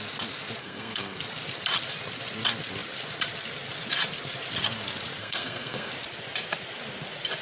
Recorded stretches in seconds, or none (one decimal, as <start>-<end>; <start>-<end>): 0.0-0.6; 1.2-5.2; 5.9-7.4